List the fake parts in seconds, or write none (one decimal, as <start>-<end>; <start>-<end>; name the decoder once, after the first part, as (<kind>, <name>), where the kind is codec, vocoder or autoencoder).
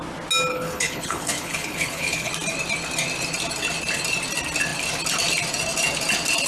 0.5-2.3 (codec, HILCodec)